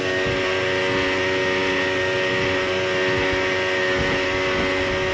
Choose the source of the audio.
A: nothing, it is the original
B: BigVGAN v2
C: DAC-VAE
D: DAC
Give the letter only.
A